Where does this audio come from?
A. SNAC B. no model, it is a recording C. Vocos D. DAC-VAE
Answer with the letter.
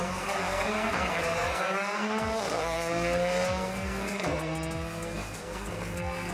A